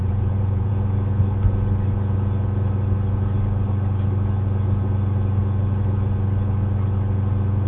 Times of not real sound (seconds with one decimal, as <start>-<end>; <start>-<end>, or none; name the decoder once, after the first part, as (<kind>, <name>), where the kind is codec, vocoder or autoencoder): 0.0-0.7 (vocoder, Vocos)